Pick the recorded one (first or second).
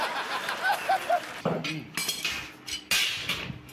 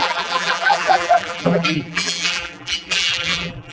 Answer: first